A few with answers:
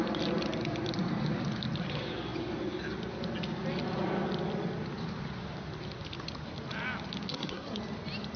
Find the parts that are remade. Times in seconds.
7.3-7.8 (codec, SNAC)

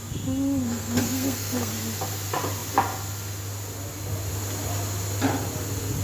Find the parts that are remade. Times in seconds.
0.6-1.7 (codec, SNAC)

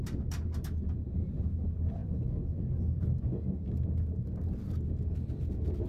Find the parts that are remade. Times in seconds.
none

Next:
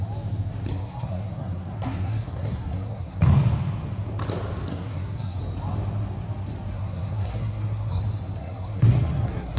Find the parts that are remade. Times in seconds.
0.7-3.2 (codec, SNAC); 4.7-5.4; 6.7-8.0; 8.4-9.6